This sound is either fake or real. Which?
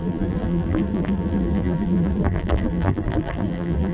fake